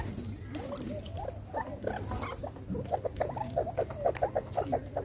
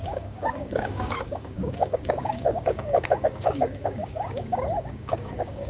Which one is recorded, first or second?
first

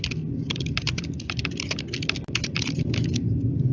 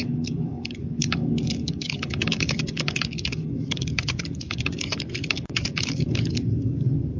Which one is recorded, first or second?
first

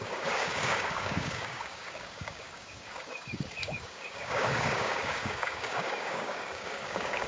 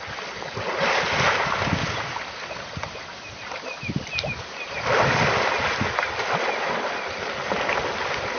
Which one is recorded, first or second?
second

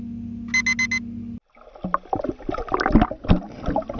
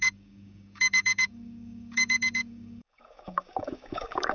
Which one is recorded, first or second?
first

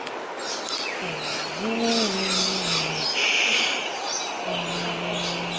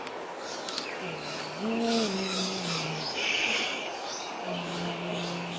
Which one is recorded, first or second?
first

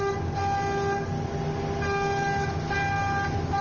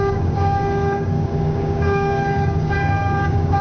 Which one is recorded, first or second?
first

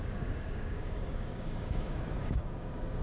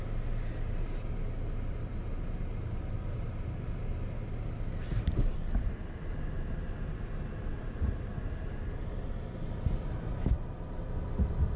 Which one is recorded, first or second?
second